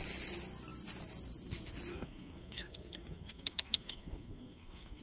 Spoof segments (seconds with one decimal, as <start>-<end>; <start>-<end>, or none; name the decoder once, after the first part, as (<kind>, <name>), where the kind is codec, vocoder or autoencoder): 1.9-5.0 (codec, SNAC)